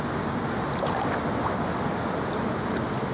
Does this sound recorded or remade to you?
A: recorded